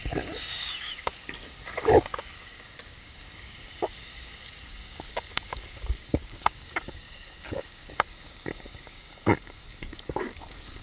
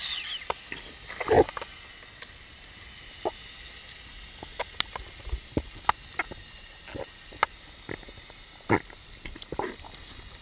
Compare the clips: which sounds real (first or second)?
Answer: second